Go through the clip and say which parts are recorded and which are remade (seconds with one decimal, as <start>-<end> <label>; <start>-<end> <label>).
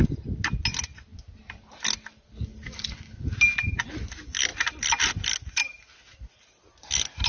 0.0-7.3 recorded